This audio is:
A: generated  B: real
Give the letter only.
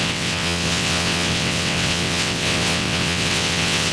A